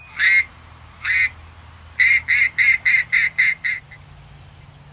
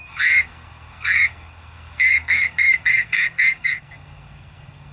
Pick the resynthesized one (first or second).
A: second